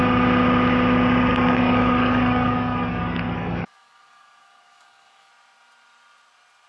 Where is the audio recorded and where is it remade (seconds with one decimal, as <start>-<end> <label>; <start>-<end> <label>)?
0.0-1.3 recorded; 1.3-5.3 remade; 5.3-6.7 recorded